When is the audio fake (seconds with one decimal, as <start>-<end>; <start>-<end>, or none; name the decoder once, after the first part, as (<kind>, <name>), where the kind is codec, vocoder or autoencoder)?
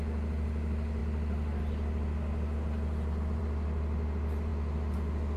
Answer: none